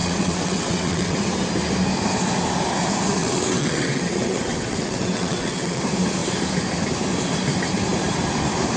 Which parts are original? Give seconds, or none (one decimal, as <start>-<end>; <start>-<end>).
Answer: 1.2-3.2; 5.8-8.8